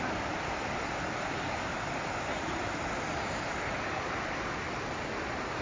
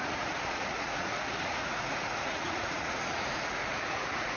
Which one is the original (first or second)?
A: first